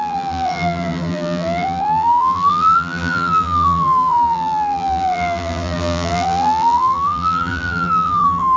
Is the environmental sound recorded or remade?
remade